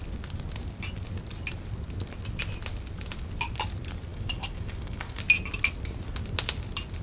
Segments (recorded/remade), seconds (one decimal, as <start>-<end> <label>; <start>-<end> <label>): 0.0-4.1 recorded; 4.1-5.2 remade; 5.2-7.0 recorded